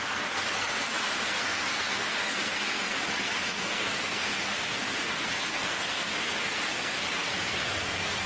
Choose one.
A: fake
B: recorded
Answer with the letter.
A